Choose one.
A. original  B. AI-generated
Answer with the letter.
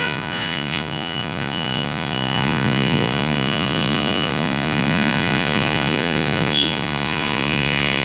B